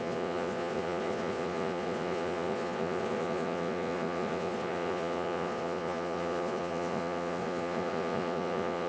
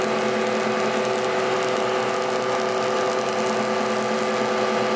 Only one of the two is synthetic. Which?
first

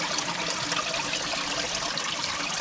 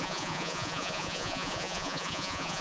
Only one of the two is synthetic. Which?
second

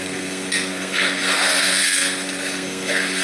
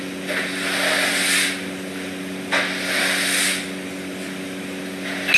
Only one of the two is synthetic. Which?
first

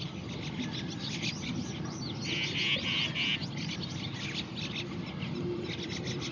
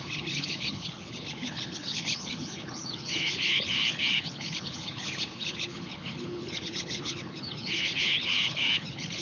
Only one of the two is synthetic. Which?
second